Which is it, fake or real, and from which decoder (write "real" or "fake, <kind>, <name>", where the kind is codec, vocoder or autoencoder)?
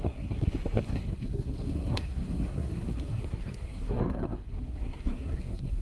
fake, codec, SNAC